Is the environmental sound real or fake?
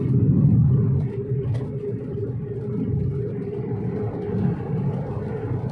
real